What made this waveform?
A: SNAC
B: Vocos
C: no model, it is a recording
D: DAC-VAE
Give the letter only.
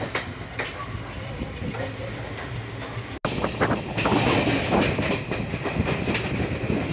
C